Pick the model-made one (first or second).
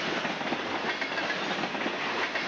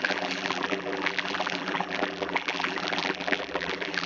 second